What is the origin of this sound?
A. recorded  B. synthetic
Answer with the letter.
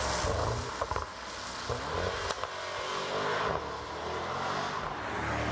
A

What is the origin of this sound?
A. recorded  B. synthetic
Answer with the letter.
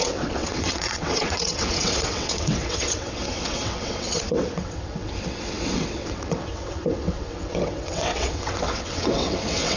B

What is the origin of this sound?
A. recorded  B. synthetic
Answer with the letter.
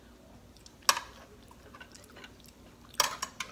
A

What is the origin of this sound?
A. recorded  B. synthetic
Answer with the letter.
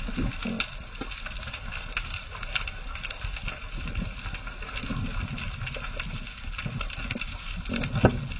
A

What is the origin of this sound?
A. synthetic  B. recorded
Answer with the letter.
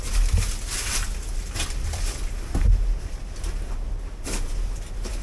B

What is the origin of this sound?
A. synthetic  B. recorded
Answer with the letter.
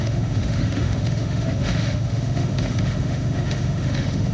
A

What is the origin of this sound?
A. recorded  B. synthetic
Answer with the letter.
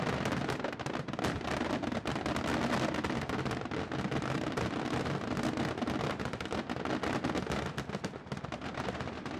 A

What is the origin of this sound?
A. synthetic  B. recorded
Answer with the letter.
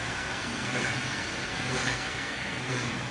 A